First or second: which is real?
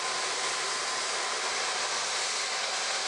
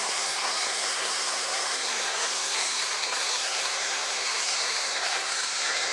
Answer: first